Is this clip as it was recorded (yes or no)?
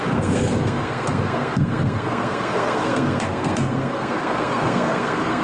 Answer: no